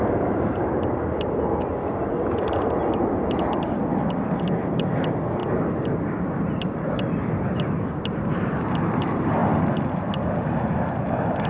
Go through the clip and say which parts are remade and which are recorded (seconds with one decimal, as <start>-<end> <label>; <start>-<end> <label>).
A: 0.0-11.5 recorded